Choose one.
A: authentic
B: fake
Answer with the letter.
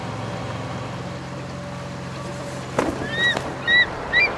A